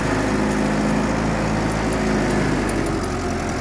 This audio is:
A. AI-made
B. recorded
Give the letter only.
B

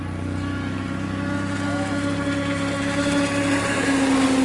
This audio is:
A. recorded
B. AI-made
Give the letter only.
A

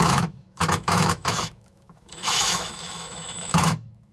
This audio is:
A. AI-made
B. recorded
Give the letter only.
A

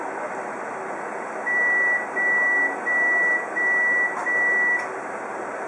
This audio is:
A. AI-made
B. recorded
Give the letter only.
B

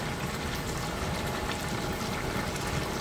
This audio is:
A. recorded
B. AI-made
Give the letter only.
A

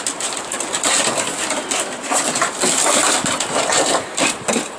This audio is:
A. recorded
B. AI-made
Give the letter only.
A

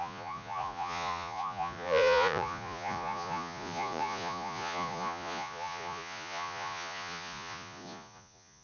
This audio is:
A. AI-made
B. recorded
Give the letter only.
A